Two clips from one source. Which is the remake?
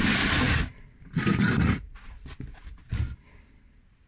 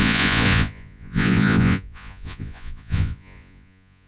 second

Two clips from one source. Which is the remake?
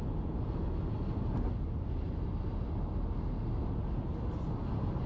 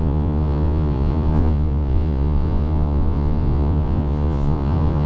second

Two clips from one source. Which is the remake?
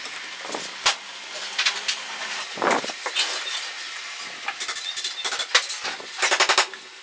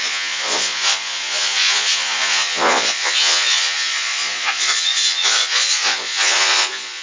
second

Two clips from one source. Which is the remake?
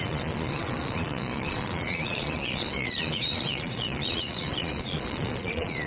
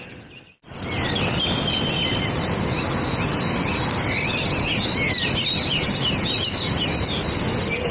first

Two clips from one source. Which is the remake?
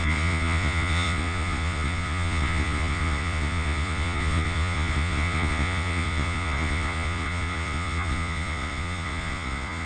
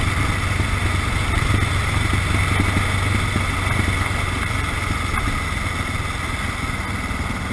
first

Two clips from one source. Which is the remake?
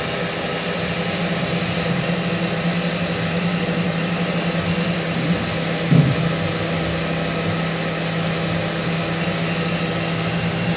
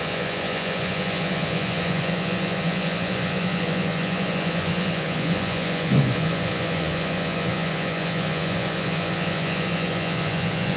second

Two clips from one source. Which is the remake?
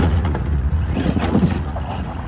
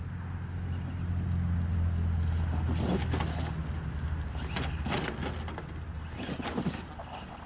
first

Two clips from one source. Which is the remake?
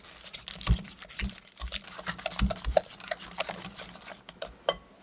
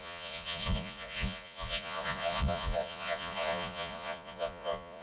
second